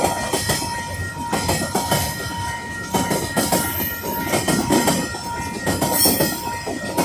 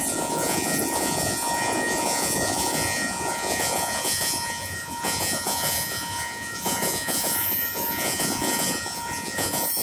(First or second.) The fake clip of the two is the second